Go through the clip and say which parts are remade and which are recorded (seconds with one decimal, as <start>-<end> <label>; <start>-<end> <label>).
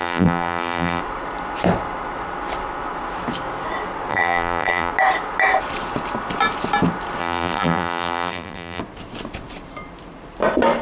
0.0-1.0 remade; 1.0-4.1 recorded; 4.1-4.9 remade; 4.9-7.2 recorded; 7.2-8.8 remade; 8.8-10.8 recorded